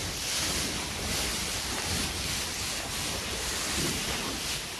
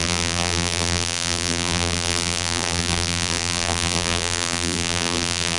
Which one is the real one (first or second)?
first